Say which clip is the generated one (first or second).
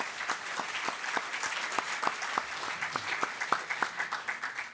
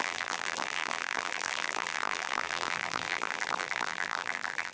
second